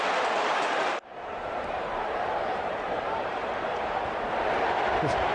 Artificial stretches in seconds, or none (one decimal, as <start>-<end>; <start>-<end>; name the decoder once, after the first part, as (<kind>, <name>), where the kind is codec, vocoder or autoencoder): 1.1-4.3 (vocoder, BigVGAN v2)

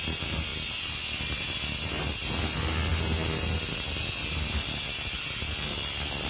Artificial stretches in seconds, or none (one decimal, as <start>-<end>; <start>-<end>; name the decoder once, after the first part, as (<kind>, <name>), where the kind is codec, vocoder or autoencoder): none

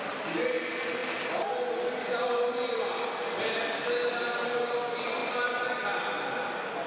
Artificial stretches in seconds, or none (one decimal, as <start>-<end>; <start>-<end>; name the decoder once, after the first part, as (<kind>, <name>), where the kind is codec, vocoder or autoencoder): 5.2-5.7 (vocoder, BigVGAN v2)

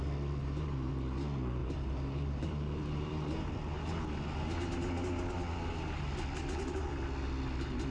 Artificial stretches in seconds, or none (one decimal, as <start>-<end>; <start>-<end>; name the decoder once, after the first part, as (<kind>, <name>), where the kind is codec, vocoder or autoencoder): 0.4-0.9 (vocoder, BigVGAN v2); 1.6-3.5

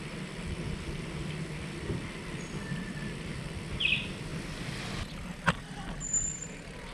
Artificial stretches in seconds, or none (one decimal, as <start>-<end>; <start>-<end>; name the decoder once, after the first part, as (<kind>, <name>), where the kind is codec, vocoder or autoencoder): 0.0-4.3 (vocoder, BigVGAN v2); 5.0-6.9

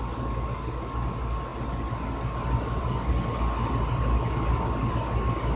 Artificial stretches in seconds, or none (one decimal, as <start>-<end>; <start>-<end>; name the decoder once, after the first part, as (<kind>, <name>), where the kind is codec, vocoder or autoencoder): 1.5-4.9 (vocoder, BigVGAN v2)

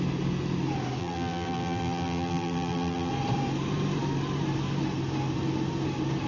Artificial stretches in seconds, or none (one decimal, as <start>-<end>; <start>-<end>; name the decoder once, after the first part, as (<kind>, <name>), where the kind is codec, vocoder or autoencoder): 1.0-3.1 (vocoder, BigVGAN v2)

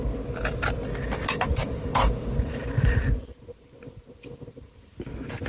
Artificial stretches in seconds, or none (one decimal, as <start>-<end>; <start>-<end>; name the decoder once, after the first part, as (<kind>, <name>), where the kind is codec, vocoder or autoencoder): none